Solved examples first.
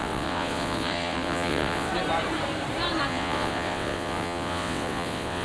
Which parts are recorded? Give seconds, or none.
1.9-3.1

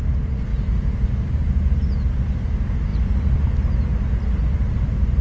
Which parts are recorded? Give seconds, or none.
0.0-5.2

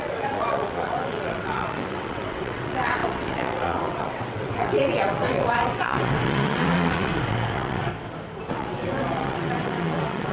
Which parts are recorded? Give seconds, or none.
7.9-8.5

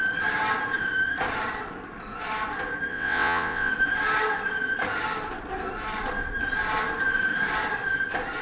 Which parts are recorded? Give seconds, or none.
0.0-2.9; 3.7-8.4

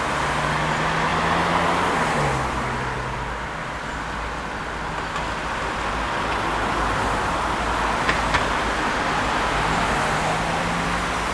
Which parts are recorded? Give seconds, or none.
0.0-11.3

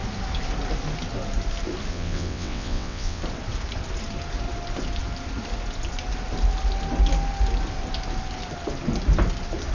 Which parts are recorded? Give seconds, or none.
0.0-1.9; 3.2-9.7

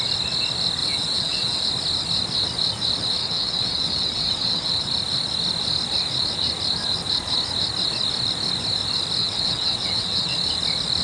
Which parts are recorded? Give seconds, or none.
0.0-0.8; 1.6-3.2; 4.9-9.2; 10.3-11.0